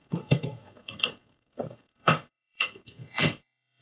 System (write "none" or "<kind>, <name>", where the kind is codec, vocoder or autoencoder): codec, SNAC